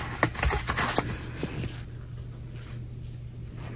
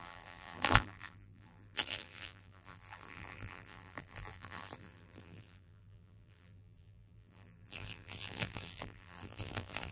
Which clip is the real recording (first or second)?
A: first